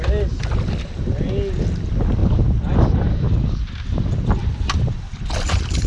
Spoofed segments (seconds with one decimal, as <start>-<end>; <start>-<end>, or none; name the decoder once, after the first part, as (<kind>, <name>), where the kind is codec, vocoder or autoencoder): none